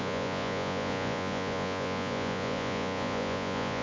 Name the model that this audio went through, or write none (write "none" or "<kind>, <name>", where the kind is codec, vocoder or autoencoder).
vocoder, Vocos